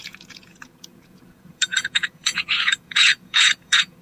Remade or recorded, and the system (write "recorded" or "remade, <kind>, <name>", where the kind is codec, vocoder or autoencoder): remade, vocoder, Vocos